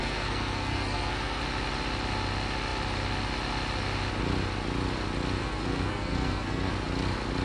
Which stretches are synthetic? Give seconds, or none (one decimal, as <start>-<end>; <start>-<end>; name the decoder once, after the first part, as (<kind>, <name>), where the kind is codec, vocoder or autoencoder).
0.0-1.4 (codec, SNAC); 5.4-6.7